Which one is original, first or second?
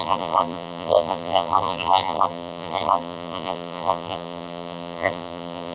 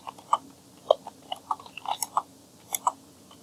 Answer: second